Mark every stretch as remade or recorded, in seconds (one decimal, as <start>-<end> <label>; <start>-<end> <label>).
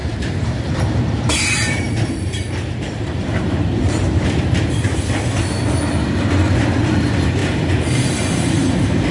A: 0.0-5.2 remade; 5.2-7.4 recorded; 7.4-8.5 remade; 8.5-9.1 recorded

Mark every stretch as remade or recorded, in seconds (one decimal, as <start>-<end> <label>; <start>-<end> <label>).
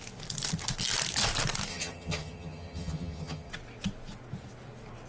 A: 0.0-1.7 recorded; 1.7-3.5 remade; 3.5-5.1 recorded